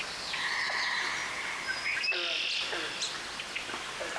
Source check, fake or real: real